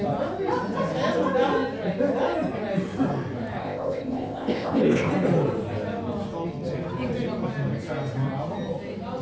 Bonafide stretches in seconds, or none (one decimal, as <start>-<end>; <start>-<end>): 0.0-3.6; 5.1-9.2